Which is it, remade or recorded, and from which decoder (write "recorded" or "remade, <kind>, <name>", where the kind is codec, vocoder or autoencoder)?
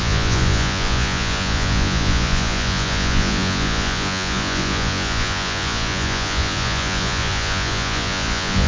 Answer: remade, vocoder, Vocos